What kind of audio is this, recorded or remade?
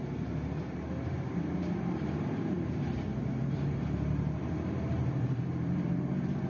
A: remade